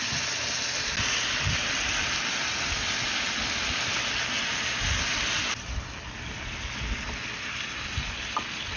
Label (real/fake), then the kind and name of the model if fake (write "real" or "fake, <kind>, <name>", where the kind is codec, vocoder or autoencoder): real